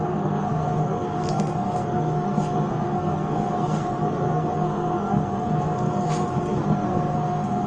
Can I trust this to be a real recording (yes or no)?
no